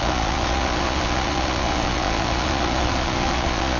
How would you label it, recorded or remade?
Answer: remade